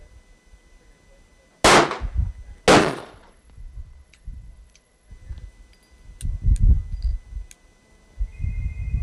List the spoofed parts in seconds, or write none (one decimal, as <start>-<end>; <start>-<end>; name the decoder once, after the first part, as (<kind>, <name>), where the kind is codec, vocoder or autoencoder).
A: 2.8-5.1 (vocoder, Vocos)